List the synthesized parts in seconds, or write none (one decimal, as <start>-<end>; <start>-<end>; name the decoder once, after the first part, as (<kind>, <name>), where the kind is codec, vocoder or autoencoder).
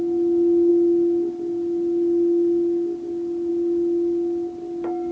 none